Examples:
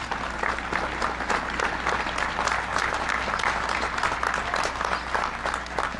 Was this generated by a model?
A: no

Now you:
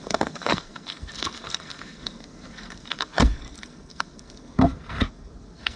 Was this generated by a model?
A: yes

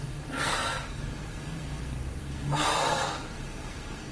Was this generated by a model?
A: yes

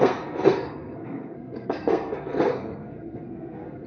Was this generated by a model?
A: yes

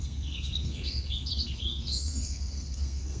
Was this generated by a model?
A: yes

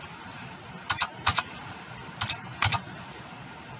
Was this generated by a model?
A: no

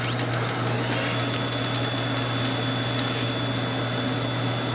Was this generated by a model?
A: no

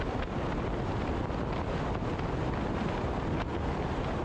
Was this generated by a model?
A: no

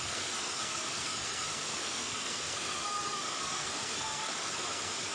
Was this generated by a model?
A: yes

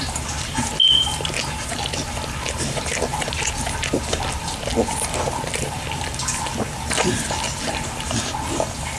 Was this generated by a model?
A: no